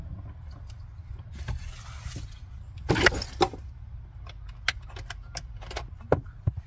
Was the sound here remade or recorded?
recorded